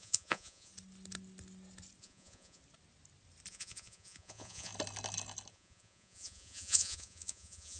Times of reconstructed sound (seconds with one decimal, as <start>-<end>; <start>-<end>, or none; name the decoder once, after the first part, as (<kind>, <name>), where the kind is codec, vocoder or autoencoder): 0.0-0.7 (vocoder, Vocos); 2.0-2.6; 3.5-4.7; 5.5-7.8